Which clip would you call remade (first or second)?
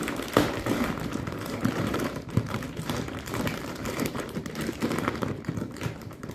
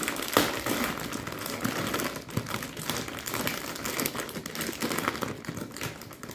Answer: first